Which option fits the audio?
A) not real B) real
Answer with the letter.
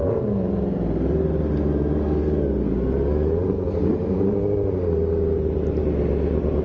B